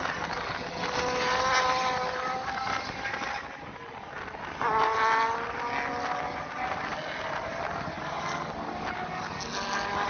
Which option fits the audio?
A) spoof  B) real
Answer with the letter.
B